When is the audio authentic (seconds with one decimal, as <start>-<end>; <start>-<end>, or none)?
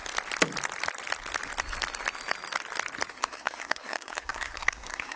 0.0-3.1